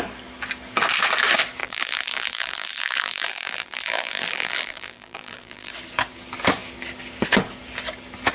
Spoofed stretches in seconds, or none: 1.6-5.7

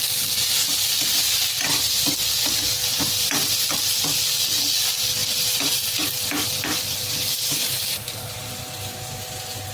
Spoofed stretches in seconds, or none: 2.8-3.5; 5.2-8.6

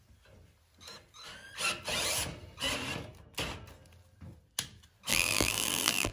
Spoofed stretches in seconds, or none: 5.1-6.1

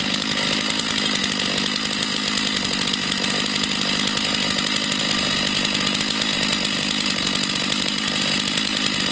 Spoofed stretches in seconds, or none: none

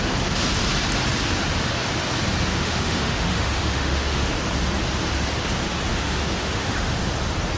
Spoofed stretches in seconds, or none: 2.5-4.3; 5.9-7.1

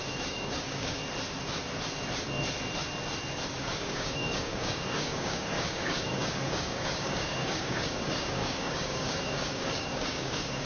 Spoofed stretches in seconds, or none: 0.0-1.0; 3.5-10.7

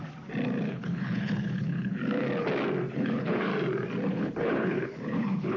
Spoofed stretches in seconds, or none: 0.7-2.0; 2.9-3.5; 4.1-5.6